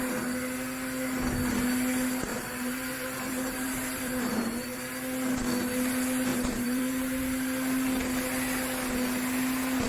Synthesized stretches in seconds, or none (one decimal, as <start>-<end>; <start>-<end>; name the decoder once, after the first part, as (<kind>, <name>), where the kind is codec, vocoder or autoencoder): 2.3-4.9 (vocoder, BigVGAN v2); 6.3-7.2

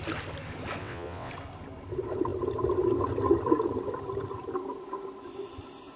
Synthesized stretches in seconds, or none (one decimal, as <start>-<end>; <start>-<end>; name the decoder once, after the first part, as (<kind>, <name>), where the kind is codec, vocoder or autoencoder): 0.8-1.3 (vocoder, WaveNeXt)

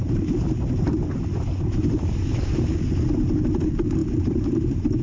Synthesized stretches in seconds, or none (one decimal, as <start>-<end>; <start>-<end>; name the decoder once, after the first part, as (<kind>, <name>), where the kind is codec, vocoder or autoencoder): 4.0-5.0 (vocoder, BigVGAN v2)